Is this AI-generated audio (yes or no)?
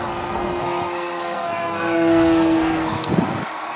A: yes